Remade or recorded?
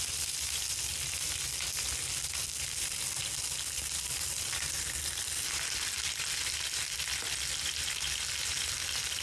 recorded